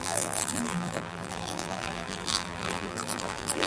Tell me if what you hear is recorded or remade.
remade